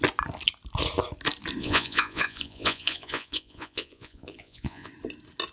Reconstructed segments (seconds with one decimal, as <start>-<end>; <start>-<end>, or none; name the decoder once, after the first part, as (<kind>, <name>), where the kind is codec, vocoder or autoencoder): 1.6-4.9 (vocoder, Vocos)

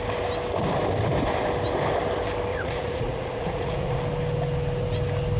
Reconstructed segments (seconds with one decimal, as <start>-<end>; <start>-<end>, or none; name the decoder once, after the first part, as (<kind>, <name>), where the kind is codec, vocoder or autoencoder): 2.5-4.0 (vocoder, Vocos)